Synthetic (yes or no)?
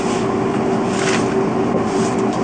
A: no